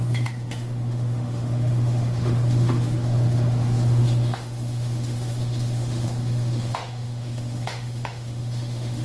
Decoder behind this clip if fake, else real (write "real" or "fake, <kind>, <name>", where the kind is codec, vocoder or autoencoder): fake, autoencoder, DAC-VAE